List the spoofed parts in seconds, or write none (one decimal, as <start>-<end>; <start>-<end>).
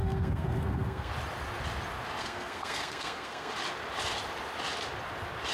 0.0-1.1; 2.2-3.5